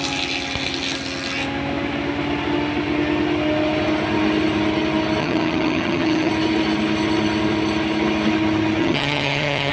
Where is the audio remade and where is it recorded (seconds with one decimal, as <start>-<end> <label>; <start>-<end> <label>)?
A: 0.0-5.2 recorded; 5.2-6.3 remade; 6.3-8.8 recorded; 8.8-9.7 remade